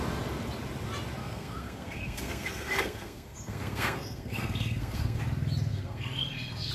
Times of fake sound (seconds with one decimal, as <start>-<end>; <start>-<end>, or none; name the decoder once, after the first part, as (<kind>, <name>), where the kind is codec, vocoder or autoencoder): 1.2-5.2 (codec, SNAC); 5.7-6.7